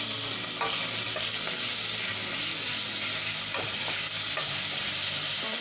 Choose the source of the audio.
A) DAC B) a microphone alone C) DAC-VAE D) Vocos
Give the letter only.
B